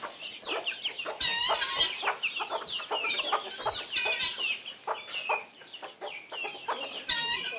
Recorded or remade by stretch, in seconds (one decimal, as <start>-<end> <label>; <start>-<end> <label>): 0.0-7.6 recorded